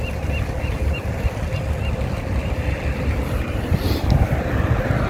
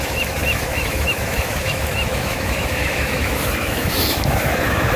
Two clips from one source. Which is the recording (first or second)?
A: first